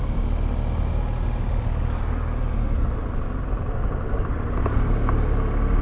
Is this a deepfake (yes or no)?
no